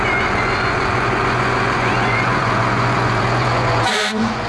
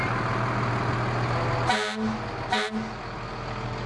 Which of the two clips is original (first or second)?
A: second